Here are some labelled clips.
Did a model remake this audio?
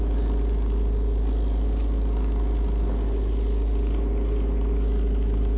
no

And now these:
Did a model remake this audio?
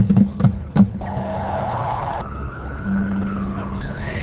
yes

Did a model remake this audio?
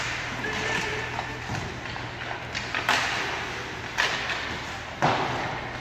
no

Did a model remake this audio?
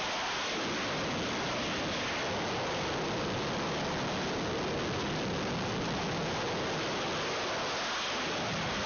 no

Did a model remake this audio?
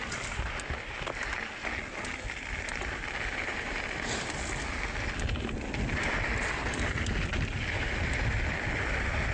no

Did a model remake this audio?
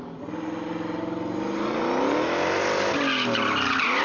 no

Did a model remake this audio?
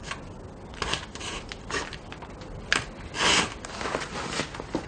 no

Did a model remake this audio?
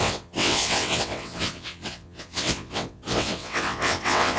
yes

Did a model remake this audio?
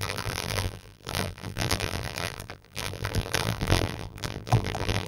yes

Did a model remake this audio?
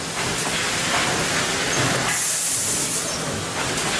no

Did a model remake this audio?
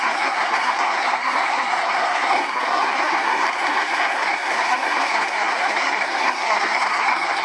yes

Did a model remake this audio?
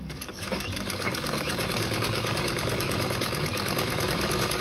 yes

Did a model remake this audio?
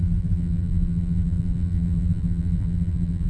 yes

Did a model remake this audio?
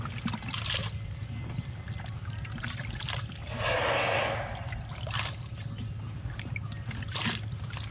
no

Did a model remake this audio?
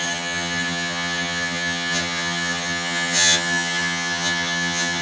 yes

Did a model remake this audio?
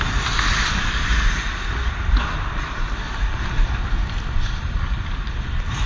no